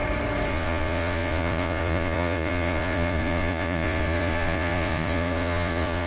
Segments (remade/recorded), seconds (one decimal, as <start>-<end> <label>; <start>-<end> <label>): 0.0-0.5 recorded; 0.5-6.1 remade